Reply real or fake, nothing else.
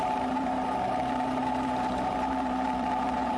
fake